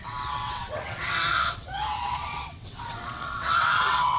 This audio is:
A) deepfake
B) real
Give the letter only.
A